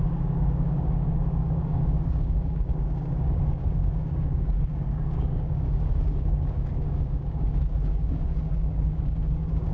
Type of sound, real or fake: fake